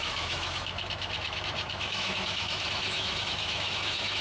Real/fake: fake